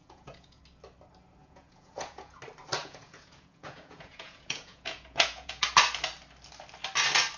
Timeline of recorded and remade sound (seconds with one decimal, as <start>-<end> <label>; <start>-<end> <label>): 0.0-0.6 remade; 0.6-1.4 recorded; 1.4-2.4 remade; 2.4-2.8 recorded; 2.8-5.7 remade; 5.7-7.4 recorded